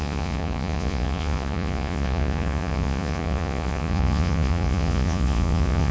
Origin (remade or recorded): remade